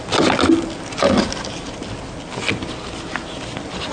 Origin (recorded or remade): recorded